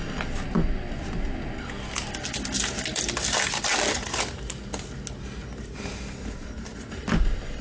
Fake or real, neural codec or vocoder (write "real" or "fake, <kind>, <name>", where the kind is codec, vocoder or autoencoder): real